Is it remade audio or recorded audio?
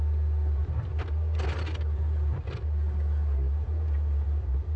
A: recorded